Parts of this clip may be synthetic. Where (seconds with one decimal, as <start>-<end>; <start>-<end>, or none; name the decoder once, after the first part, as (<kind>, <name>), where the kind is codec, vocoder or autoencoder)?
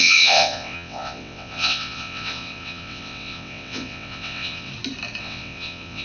0.0-4.7 (vocoder, WaveNeXt); 5.2-6.0